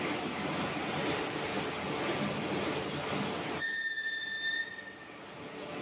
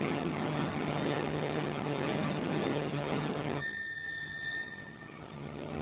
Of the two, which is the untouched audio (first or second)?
first